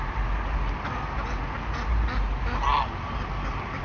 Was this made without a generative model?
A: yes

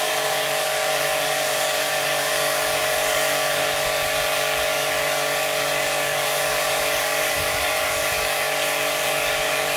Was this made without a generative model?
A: no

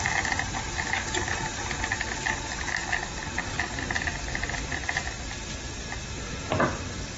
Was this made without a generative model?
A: yes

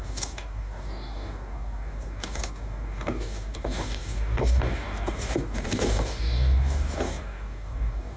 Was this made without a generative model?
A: no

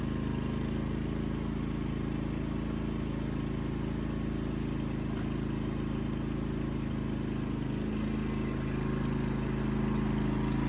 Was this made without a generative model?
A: yes